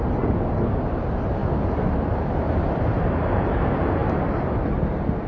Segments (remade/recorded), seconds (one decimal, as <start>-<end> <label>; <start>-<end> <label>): 0.0-5.3 recorded